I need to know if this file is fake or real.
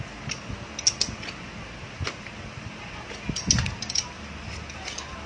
real